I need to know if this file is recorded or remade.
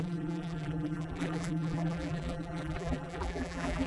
remade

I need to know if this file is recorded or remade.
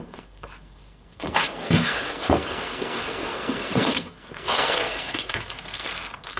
remade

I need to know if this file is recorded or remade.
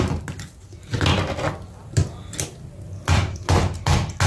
recorded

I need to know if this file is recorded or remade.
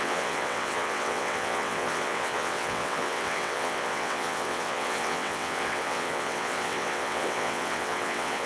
remade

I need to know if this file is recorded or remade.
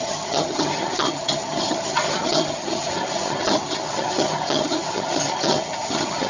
remade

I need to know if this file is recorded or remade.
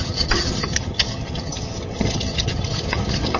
remade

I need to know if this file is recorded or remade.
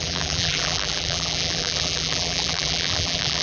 remade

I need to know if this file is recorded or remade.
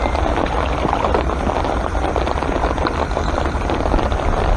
recorded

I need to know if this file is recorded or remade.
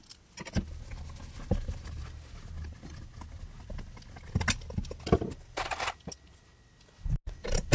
recorded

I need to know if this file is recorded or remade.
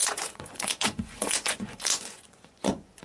remade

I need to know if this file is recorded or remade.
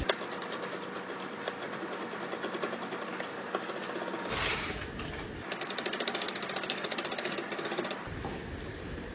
recorded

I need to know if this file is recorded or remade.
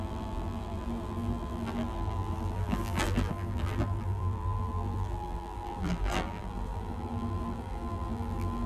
remade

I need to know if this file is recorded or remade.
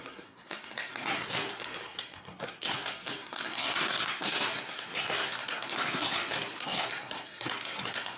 remade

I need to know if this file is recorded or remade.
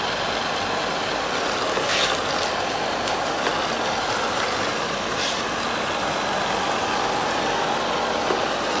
recorded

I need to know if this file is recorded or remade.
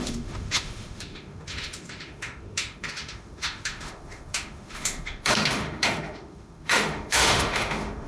remade